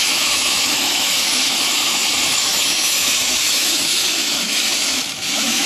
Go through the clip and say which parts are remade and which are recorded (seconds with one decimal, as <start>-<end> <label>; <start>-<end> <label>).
0.0-5.7 remade